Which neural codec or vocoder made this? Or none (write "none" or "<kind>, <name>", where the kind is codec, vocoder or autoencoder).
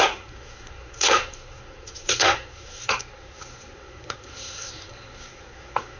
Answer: codec, SNAC